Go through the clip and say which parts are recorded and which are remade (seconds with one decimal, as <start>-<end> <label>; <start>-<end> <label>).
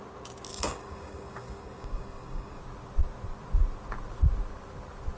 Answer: 0.0-0.5 recorded; 0.5-2.6 remade; 2.6-5.2 recorded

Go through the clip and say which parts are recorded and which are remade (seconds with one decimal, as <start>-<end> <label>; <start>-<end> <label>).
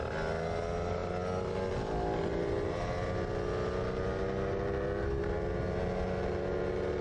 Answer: 0.0-7.0 recorded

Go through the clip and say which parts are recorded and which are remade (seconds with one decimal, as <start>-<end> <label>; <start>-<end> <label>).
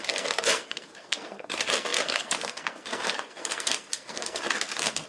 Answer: 0.0-5.1 remade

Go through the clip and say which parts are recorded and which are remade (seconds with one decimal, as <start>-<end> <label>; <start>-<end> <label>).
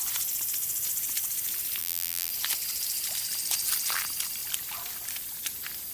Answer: 0.0-1.8 recorded; 1.8-2.3 remade; 2.3-5.9 recorded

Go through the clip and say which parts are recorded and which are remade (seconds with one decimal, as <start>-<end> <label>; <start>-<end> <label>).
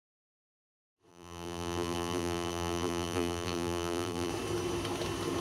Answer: 0.0-1.1 recorded; 1.1-4.3 remade; 4.3-5.4 recorded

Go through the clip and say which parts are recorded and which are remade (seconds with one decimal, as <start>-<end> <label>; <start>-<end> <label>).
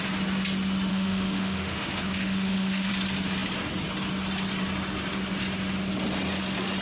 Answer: 0.0-0.9 recorded; 0.9-2.9 remade; 2.9-6.8 recorded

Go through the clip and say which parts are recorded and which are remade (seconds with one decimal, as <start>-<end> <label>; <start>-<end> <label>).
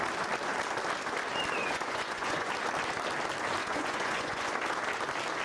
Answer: 0.0-1.6 recorded; 1.6-2.5 remade; 2.5-3.6 recorded; 3.6-4.5 remade; 4.5-5.4 recorded